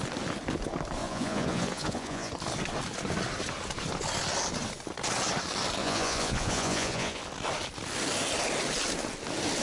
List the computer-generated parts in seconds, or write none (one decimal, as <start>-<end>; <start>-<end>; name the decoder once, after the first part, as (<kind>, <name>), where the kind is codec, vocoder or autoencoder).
1.0-2.3 (vocoder, Vocos); 5.8-7.2